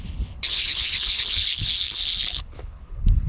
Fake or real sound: fake